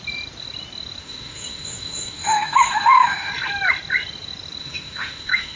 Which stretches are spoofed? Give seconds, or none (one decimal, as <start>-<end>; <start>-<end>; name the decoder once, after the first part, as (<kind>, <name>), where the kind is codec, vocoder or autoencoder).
1.0-3.3 (autoencoder, DAC-VAE); 4.6-5.6